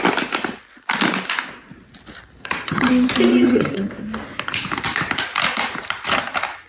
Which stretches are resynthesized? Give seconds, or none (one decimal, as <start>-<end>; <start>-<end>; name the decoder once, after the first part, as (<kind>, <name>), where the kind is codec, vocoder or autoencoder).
2.4-2.9 (vocoder, HiFi-GAN); 3.3-3.9